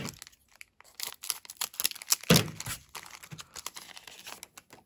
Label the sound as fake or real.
real